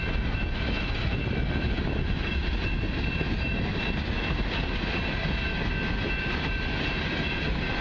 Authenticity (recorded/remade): recorded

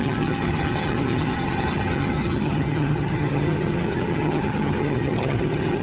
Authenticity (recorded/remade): remade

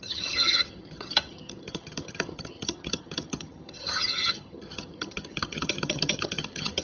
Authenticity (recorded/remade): remade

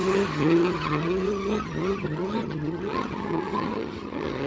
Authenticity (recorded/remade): remade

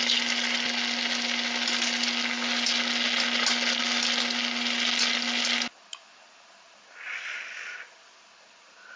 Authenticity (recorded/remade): recorded